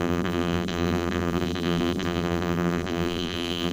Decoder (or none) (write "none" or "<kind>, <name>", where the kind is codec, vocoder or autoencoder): vocoder, BigVGAN v2